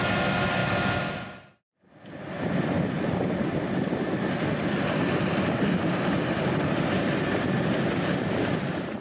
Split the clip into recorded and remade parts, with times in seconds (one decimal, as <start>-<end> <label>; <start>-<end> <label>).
0.0-9.0 recorded